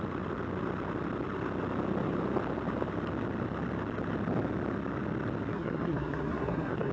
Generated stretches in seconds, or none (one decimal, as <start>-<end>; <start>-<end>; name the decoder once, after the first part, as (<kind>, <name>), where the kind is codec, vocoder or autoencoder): 5.5-6.9 (codec, SNAC)